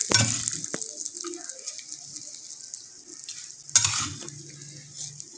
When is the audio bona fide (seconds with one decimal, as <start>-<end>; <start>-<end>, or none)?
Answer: 0.0-5.4